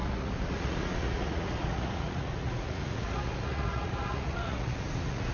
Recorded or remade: remade